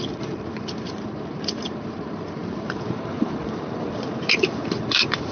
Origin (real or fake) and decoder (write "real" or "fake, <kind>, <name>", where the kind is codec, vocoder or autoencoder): fake, vocoder, BigVGAN v2